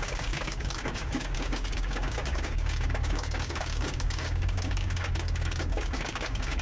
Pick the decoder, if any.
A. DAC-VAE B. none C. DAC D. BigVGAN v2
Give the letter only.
C